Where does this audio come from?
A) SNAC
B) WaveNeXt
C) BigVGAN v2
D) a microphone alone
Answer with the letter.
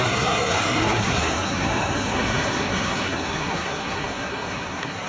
A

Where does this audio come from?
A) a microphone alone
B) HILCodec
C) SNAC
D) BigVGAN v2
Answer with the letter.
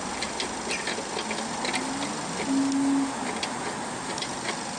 A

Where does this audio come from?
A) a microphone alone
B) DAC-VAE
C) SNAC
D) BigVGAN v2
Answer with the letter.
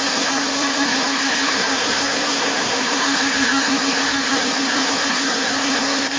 C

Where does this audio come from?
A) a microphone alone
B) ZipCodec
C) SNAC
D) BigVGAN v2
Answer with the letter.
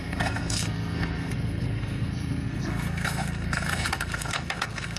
C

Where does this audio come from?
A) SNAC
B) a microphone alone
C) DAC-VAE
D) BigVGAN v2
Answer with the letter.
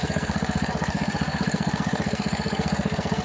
A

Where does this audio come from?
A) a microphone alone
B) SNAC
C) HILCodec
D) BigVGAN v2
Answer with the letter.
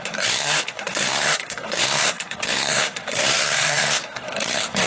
B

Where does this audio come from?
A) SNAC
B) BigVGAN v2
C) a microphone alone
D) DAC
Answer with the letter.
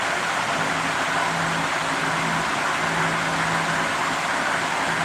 C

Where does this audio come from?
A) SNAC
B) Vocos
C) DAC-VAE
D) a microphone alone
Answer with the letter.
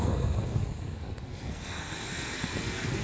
A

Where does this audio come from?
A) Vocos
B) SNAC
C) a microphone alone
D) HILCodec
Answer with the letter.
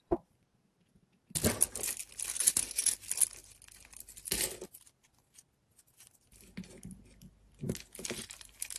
C